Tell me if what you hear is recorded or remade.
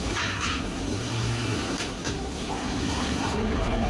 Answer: remade